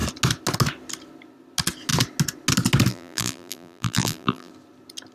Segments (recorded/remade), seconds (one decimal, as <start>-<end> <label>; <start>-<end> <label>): 0.0-2.9 recorded; 2.9-4.5 remade; 4.5-5.1 recorded